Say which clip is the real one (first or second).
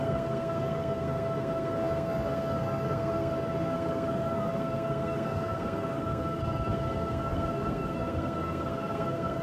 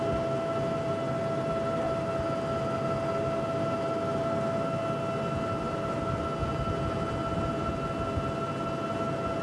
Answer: second